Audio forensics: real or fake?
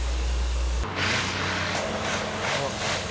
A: fake